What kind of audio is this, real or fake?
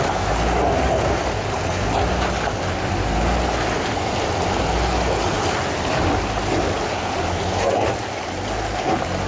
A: real